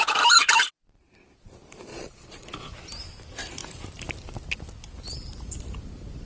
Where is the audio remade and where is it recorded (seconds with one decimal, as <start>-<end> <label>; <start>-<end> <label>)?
0.0-1.9 recorded; 1.9-2.7 remade; 2.7-6.3 recorded